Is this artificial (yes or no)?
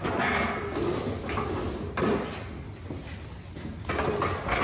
no